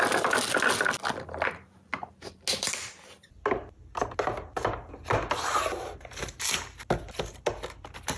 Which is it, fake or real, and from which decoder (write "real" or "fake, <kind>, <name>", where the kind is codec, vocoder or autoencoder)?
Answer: real